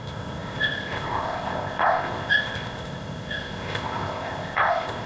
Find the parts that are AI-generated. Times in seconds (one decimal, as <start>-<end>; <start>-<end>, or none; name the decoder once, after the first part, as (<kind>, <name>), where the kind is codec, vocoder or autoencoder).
0.0-5.1 (codec, ZipCodec)